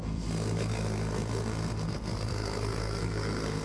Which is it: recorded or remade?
remade